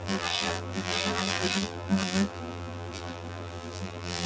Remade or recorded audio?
remade